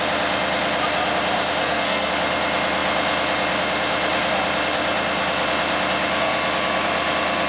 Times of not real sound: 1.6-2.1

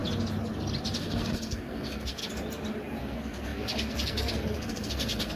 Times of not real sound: 1.0-2.2; 3.0-5.4

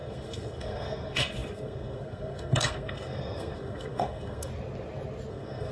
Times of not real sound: 0.0-4.5; 5.3-5.7

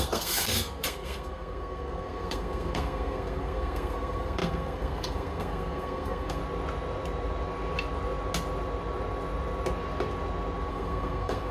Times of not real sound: 0.0-6.4; 10.7-11.5

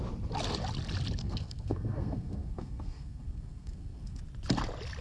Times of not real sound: 1.2-4.2